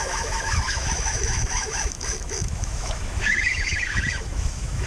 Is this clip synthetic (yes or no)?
yes